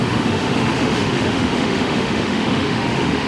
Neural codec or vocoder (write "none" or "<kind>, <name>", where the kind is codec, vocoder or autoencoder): autoencoder, DAC-VAE